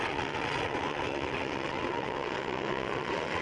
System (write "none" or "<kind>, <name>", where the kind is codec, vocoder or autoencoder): vocoder, WaveNeXt